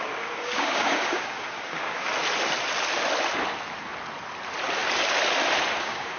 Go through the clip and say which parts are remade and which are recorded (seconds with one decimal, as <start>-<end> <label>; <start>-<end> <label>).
0.0-2.1 remade; 2.1-5.8 recorded; 5.8-6.2 remade